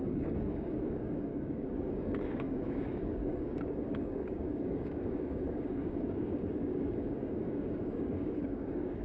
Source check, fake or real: fake